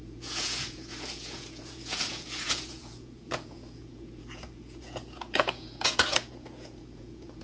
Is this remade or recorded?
remade